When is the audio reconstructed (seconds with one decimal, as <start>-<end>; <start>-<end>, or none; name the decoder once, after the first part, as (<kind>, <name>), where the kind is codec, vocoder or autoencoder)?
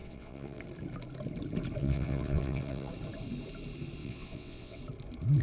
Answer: 0.0-0.6 (vocoder, WaveNeXt); 1.8-2.9; 4.0-4.8